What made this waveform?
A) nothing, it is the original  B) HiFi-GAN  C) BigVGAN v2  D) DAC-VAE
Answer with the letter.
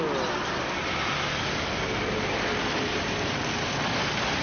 A